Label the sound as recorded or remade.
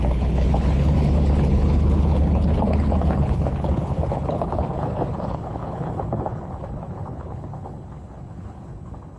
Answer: remade